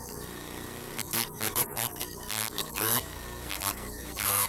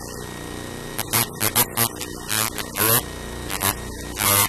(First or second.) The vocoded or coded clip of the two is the first